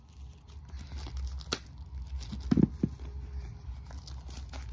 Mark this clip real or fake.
real